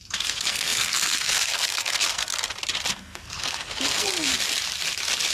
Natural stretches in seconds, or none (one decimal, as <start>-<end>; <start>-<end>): 2.3-2.9; 4.3-5.3